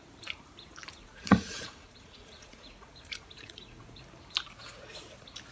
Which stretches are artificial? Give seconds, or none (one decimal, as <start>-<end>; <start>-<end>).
1.0-4.0